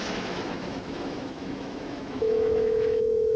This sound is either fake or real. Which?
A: fake